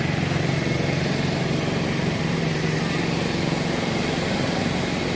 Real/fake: fake